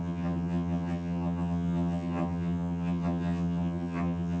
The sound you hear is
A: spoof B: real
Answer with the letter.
A